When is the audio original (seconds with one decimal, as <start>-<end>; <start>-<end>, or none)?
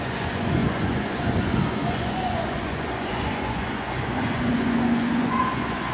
none